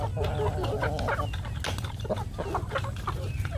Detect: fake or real real